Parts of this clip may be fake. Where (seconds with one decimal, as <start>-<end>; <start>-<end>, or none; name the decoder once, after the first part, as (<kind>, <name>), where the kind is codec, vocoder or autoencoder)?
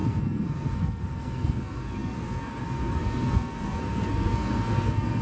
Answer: 0.0-5.2 (codec, SNAC)